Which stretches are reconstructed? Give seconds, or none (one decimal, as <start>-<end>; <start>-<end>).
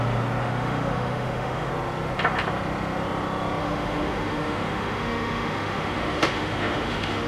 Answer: 0.4-1.7; 3.6-7.3